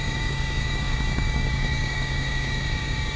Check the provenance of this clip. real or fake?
fake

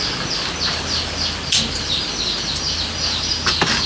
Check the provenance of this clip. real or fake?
real